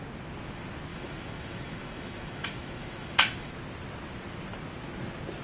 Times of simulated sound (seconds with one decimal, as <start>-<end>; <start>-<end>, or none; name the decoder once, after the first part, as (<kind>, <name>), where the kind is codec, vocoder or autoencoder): 0.9-3.5 (autoencoder, DAC-VAE)

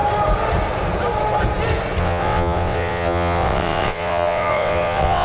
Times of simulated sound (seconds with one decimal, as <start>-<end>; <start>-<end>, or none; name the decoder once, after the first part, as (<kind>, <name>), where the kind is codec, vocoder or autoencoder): 2.0-5.2 (vocoder, WaveNeXt)

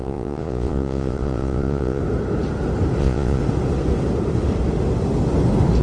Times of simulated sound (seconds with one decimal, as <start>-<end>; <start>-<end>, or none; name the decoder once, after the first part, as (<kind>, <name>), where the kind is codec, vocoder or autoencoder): 0.0-2.0 (vocoder, Vocos); 3.0-3.4

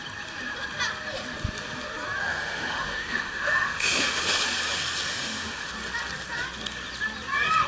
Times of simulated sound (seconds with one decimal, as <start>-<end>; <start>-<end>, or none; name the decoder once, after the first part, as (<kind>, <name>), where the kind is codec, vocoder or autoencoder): 2.2-4.2 (autoencoder, DAC-VAE); 5.1-5.7

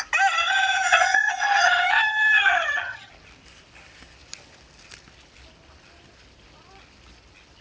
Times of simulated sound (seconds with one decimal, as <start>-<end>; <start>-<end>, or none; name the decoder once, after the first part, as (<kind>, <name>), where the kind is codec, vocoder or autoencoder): 0.4-3.1 (vocoder, HiFi-GAN)

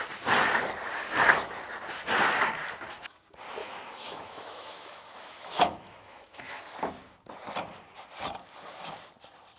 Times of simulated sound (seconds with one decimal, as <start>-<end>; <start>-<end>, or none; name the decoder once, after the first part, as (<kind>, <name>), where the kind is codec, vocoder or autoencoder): 3.6-6.6 (autoencoder, DAC-VAE)

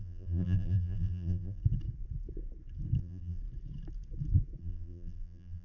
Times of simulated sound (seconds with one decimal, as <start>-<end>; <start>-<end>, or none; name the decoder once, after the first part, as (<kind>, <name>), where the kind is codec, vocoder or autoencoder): 0.0-1.6 (vocoder, BigVGAN v2); 3.0-3.4; 4.6-5.6